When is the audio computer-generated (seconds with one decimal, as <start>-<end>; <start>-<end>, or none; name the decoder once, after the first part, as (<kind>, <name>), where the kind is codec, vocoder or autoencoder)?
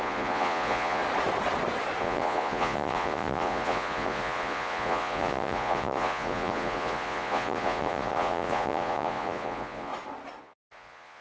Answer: 0.0-1.0 (vocoder, Vocos); 2.0-9.9; 10.4-11.2